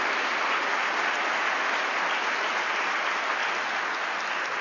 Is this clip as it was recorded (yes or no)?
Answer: yes